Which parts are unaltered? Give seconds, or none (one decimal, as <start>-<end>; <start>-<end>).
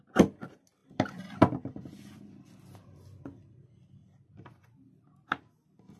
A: 0.0-6.0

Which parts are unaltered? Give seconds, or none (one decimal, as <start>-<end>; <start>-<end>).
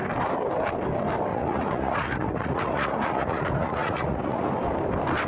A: 0.0-1.3; 4.5-5.3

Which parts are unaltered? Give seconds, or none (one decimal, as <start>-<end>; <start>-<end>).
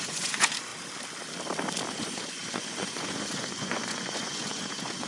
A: 0.7-1.9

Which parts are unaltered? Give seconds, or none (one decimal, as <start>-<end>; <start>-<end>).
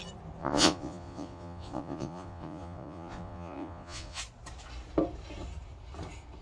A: 0.0-0.4; 4.2-6.4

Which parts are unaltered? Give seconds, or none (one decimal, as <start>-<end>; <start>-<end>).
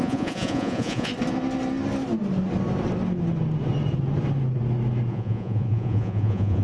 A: 1.1-5.1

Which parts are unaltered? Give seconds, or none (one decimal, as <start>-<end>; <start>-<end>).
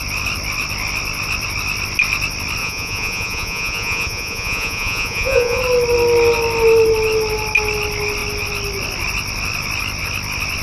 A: 0.0-2.6; 5.6-10.6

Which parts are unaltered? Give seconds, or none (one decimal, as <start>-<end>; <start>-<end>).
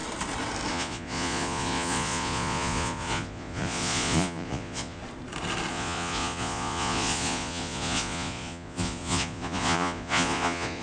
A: 0.0-0.7; 5.0-5.7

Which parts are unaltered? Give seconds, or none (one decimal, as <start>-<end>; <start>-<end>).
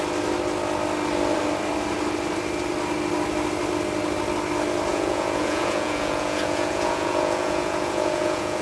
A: 0.0-4.9